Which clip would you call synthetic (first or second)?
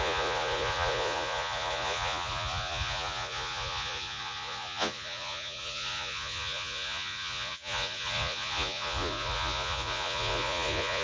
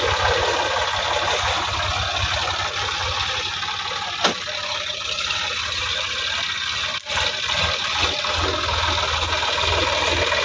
first